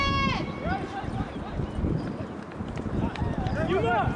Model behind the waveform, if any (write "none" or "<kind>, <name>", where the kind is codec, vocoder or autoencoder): none